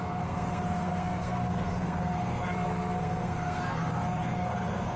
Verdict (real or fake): fake